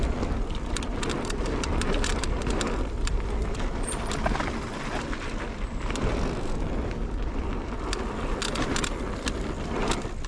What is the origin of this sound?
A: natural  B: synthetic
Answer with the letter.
A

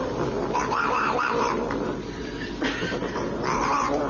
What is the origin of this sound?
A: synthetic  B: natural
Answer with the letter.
B